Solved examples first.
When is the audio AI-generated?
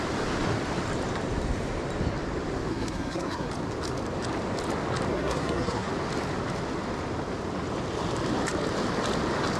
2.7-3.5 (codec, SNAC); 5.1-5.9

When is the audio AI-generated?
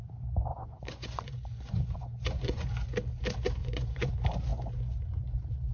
0.5-2.7 (vocoder, Vocos); 3.6-4.1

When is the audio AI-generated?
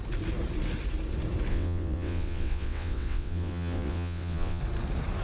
1.5-4.6 (vocoder, WaveNeXt)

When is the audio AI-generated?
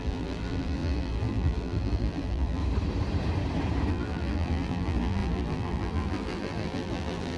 0.0-2.6 (vocoder, BigVGAN v2); 3.9-7.4